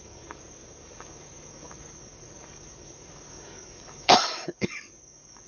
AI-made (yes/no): yes